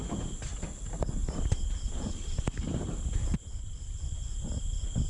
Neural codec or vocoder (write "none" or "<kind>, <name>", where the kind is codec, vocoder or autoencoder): none